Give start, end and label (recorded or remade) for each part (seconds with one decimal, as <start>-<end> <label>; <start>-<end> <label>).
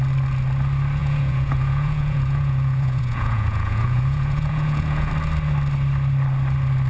0.0-1.0 recorded; 1.0-5.1 remade; 5.1-6.9 recorded